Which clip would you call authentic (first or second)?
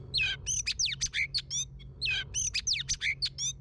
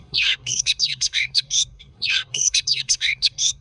first